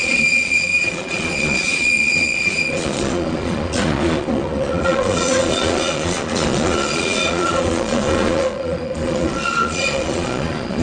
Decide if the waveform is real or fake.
fake